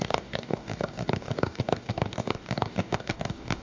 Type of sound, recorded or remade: remade